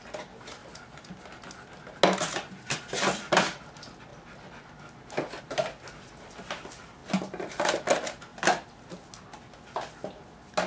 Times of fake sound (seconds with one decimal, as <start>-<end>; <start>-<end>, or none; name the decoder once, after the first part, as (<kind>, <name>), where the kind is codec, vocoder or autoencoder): none